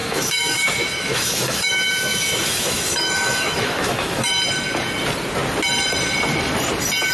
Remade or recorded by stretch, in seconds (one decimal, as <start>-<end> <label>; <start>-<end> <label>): 0.0-4.3 remade; 4.3-7.1 recorded